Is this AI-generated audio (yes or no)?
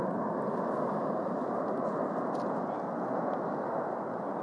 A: no